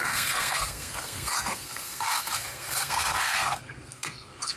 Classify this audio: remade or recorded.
remade